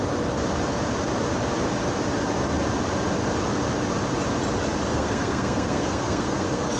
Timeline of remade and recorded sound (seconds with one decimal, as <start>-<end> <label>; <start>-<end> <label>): 0.0-4.9 recorded; 4.9-6.8 remade